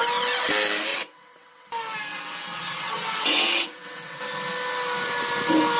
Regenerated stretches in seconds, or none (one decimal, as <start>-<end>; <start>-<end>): 0.9-1.7; 2.1-4.2